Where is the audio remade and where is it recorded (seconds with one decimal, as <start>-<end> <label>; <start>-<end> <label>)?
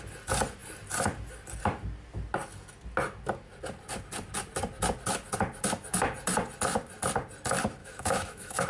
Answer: 0.0-7.8 recorded; 7.8-8.7 remade